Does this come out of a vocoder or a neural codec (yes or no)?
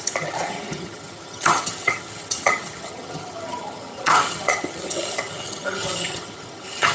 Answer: yes